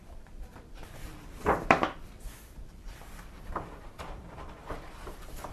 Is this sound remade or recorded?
remade